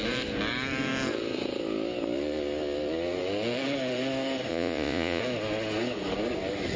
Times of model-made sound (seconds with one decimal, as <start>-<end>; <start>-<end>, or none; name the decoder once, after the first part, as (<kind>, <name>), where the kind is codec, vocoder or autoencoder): 4.5-5.2 (vocoder, Vocos)